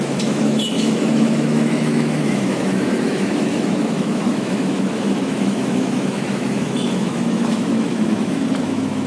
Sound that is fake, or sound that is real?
fake